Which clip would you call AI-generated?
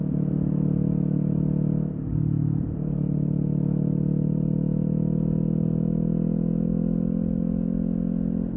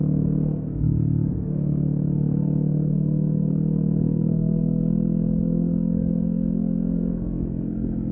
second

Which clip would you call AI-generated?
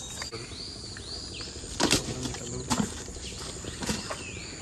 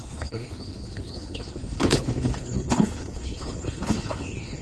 second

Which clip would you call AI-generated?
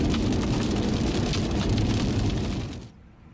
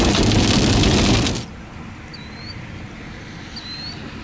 first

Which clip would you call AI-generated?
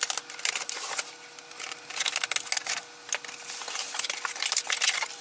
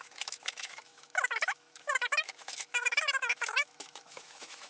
second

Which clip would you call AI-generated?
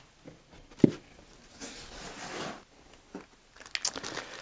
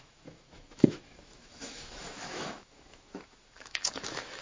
second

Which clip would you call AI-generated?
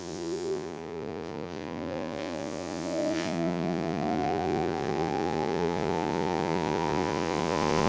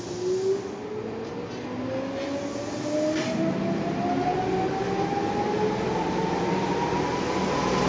first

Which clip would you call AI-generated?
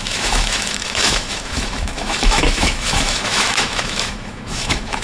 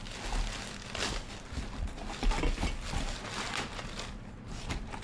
first